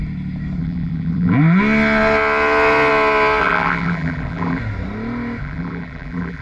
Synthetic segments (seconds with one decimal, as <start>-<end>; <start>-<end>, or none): 0.6-1.3; 3.4-4.6; 5.4-6.4